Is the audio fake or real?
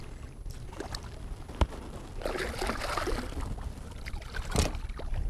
real